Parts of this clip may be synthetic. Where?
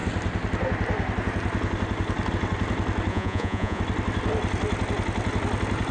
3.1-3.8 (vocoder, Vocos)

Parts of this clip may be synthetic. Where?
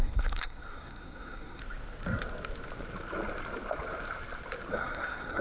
0.0-1.6 (codec, SNAC); 4.7-5.4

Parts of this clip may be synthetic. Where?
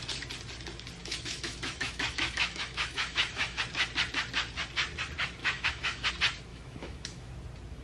1.0-3.6 (autoencoder, DAC-VAE); 5.4-6.1; 6.5-7.3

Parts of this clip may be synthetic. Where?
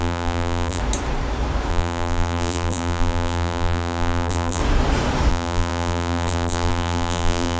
0.0-0.8 (vocoder, BigVGAN v2); 1.7-4.6; 5.3-7.6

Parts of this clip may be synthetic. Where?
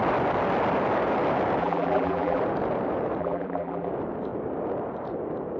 1.6-2.4 (vocoder, BigVGAN v2); 3.2-3.9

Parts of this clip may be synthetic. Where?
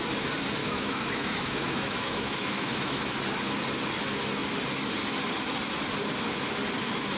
0.6-3.1 (autoencoder, DAC-VAE)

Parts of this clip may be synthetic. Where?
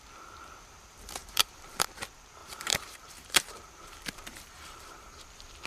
1.2-1.9 (vocoder, BigVGAN v2); 2.4-5.1